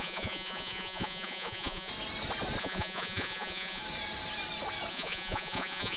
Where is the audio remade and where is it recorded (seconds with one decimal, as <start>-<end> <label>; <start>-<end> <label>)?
0.0-1.9 remade; 1.9-2.6 recorded; 2.6-3.8 remade; 3.8-4.9 recorded; 4.9-6.0 remade